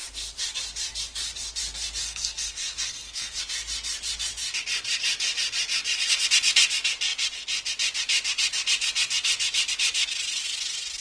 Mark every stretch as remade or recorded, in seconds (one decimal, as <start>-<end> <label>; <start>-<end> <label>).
0.0-2.0 recorded; 2.0-3.4 remade; 3.4-11.0 recorded